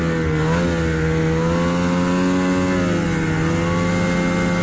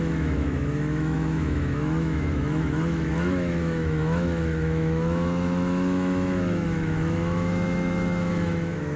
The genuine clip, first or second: first